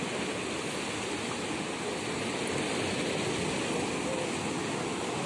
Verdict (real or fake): real